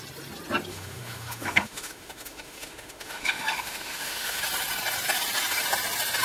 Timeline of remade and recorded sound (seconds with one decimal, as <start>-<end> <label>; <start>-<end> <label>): 0.0-0.7 recorded; 0.7-4.4 remade; 4.4-6.2 recorded